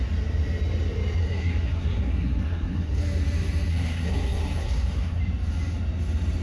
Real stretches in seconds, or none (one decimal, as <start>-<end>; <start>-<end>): 0.0-1.2; 3.0-3.7; 5.2-6.4